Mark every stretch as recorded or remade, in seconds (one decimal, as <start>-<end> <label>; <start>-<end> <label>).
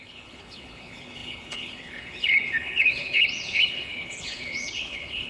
0.0-5.3 remade